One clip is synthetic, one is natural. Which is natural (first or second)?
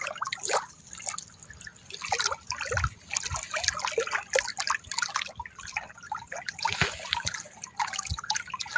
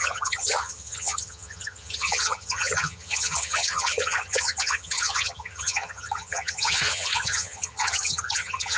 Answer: first